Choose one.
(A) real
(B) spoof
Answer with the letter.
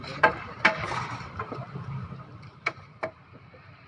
B